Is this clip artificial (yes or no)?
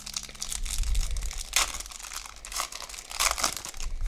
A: no